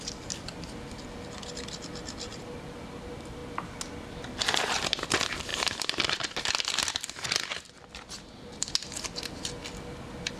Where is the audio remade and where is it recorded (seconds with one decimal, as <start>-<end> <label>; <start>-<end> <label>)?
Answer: 0.0-10.4 recorded